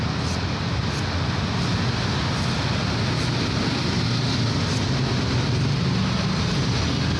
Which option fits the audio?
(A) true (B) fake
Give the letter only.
A